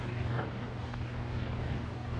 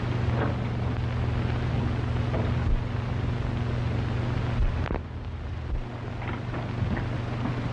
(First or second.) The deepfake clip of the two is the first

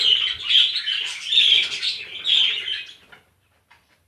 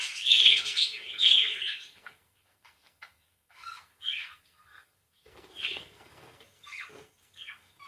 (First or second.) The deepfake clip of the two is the second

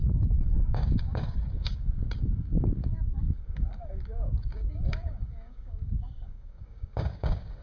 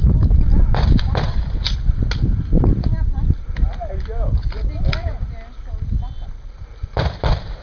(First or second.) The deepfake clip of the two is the first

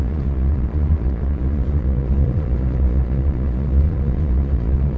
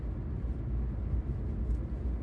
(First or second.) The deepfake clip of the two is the first